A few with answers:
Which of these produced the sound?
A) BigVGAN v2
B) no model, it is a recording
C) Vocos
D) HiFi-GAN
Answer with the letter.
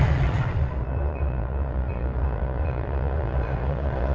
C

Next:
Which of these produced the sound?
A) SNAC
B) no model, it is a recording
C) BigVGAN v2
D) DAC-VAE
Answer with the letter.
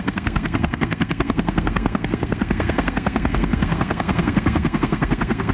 A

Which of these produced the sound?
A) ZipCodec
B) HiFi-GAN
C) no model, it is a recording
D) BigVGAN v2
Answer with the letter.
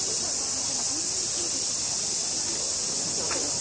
C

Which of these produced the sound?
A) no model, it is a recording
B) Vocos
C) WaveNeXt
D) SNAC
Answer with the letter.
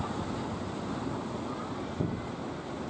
A